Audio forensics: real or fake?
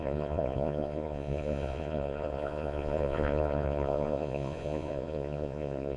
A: fake